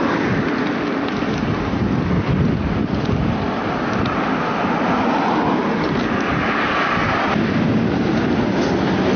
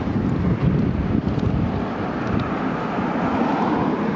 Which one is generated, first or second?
second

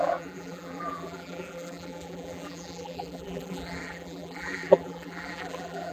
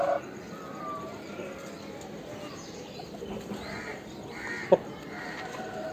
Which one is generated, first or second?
first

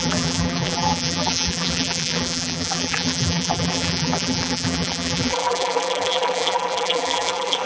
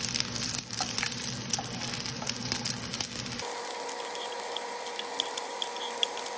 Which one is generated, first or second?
first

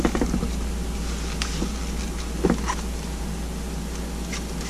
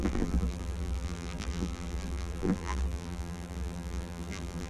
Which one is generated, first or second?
second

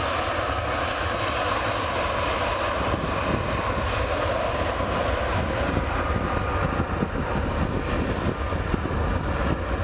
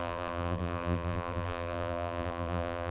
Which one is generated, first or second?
second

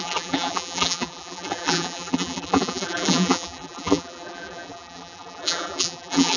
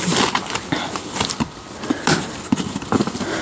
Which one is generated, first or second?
first